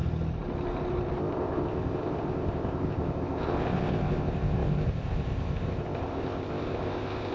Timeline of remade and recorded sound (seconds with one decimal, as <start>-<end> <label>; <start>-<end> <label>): 0.0-1.2 recorded; 1.2-7.3 remade